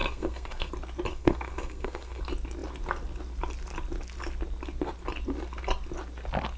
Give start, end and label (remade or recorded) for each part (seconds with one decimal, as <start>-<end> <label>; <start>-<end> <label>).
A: 0.0-0.7 remade; 0.7-1.1 recorded; 1.1-2.2 remade; 2.2-6.6 recorded